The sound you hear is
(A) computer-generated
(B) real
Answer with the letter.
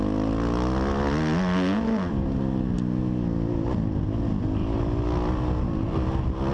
B